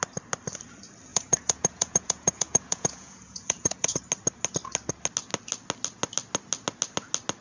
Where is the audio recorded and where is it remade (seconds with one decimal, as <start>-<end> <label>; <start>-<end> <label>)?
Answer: 0.0-1.1 recorded; 1.1-4.0 remade; 4.0-7.4 recorded